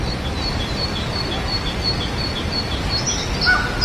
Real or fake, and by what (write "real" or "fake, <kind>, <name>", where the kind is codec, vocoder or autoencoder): real